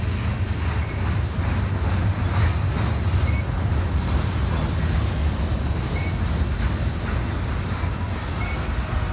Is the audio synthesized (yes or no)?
no